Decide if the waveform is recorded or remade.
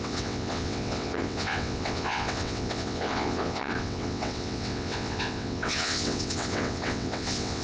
remade